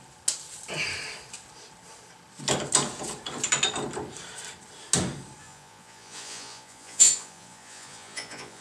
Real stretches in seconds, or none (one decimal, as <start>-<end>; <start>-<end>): 0.0-5.4